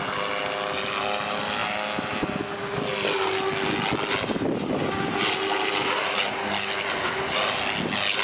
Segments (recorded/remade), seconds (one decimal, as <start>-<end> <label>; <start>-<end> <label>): 0.0-8.2 recorded